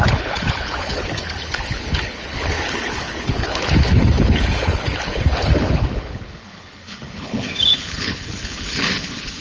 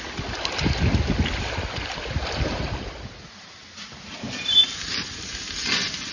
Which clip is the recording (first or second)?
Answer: second